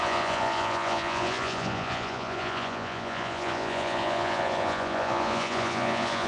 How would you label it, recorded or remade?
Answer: remade